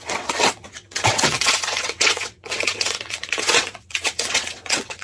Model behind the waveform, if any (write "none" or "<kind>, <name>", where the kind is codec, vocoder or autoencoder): vocoder, WaveNeXt